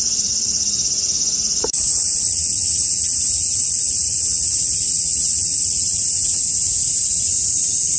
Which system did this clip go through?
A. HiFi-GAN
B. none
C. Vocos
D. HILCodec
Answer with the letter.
C